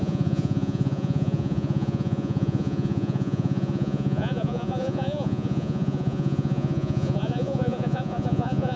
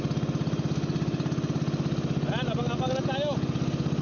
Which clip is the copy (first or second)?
first